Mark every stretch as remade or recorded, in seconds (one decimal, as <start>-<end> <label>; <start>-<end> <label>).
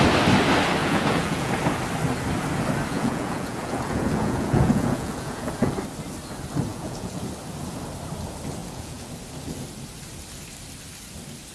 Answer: 0.0-0.8 recorded; 0.8-1.5 remade; 1.5-2.9 recorded; 2.9-5.7 remade; 5.7-6.7 recorded; 6.7-7.2 remade; 7.2-8.6 recorded; 8.6-9.1 remade; 9.1-11.5 recorded